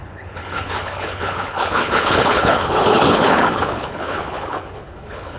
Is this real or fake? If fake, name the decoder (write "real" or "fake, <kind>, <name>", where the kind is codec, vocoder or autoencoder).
fake, codec, HILCodec